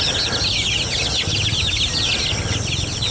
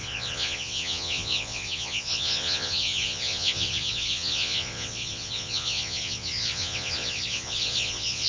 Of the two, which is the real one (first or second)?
first